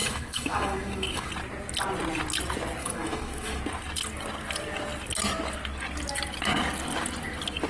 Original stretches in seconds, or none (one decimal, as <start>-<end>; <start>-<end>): 1.3-2.8; 3.6-7.7